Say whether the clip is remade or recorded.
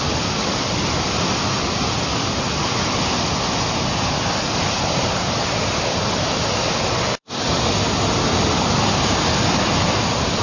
recorded